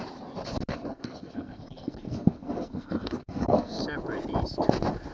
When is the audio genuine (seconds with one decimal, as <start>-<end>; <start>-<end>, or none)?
0.0-0.7; 3.8-5.1